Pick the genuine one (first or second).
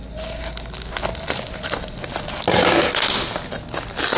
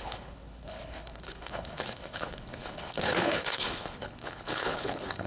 first